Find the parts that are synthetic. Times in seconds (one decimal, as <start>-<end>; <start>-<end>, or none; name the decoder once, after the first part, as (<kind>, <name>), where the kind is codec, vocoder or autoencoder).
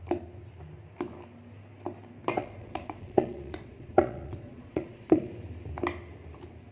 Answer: 2.3-5.3 (vocoder, Vocos)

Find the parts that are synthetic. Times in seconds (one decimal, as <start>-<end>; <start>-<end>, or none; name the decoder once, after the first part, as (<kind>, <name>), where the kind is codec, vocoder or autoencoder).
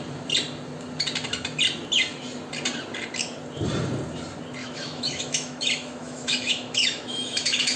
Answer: 4.6-7.8 (autoencoder, DAC-VAE)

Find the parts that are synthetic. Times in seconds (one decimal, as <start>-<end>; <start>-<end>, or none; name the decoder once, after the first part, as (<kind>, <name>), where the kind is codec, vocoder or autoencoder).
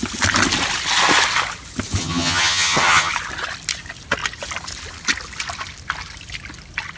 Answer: 2.0-3.1 (vocoder, HiFi-GAN)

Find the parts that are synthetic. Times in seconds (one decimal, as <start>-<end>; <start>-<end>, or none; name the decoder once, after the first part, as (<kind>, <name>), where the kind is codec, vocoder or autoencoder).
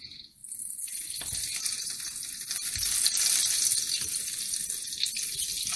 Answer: none